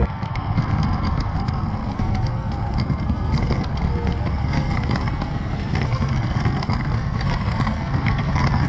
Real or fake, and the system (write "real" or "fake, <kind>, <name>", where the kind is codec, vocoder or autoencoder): fake, codec, SNAC